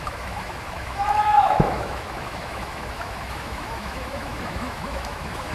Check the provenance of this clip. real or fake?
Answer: fake